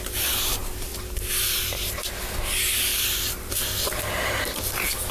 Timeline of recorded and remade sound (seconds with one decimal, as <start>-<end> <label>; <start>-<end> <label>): 0.0-5.1 recorded